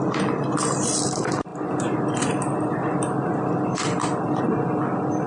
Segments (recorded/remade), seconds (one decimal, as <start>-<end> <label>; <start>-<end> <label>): 0.0-5.3 remade